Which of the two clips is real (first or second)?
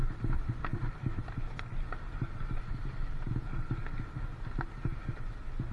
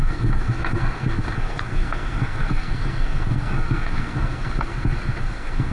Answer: first